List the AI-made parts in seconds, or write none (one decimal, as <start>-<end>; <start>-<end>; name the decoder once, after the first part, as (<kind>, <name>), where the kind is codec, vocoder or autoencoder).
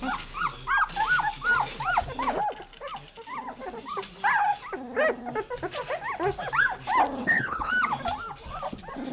7.2-7.7 (codec, HILCodec)